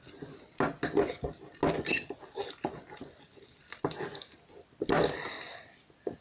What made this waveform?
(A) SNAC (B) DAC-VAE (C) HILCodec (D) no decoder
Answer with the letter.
D